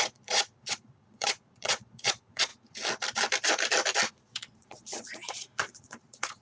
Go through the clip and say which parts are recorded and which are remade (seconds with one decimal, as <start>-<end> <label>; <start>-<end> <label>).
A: 0.0-2.5 remade; 2.5-4.1 recorded; 4.1-6.4 remade